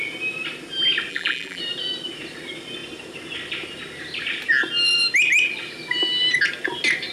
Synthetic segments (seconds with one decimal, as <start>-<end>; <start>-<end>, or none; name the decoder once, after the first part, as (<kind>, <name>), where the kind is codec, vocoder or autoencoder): 1.1-1.6 (vocoder, BigVGAN v2)